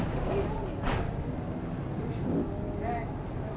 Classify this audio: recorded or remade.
recorded